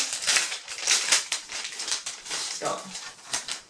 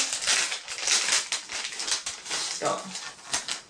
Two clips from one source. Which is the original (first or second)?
second